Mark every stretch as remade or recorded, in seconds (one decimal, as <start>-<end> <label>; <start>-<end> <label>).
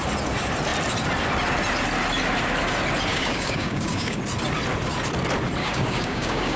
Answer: 0.0-3.1 recorded; 3.1-4.2 remade; 4.2-5.6 recorded; 5.6-6.6 remade